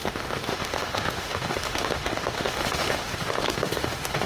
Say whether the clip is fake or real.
fake